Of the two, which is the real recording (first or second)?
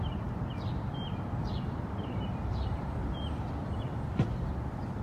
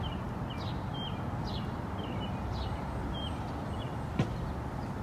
second